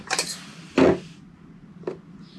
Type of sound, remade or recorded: recorded